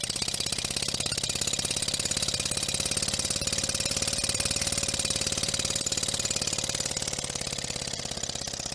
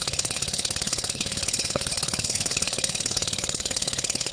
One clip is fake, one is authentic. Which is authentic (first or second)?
first